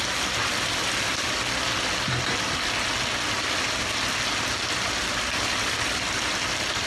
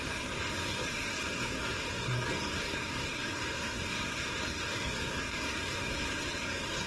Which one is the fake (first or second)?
second